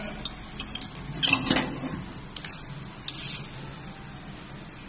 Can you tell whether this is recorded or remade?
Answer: recorded